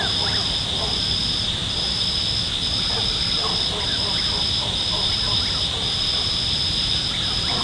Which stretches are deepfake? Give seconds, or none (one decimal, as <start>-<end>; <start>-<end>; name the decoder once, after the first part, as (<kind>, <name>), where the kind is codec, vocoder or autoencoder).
none